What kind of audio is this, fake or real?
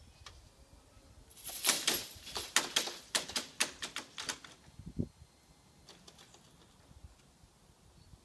real